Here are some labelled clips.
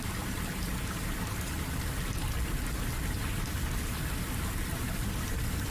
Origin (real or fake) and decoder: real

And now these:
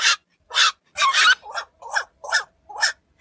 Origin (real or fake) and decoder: real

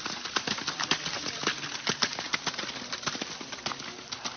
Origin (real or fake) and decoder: real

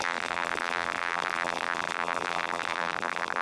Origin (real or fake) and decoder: fake, vocoder, BigVGAN v2